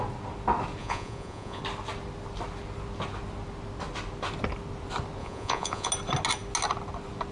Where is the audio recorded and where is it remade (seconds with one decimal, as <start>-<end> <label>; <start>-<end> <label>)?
0.0-0.8 recorded; 0.8-1.6 remade; 1.6-5.2 recorded; 5.2-5.9 remade; 5.9-7.3 recorded